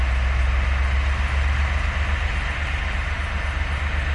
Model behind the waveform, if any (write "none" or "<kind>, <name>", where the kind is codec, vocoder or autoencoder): none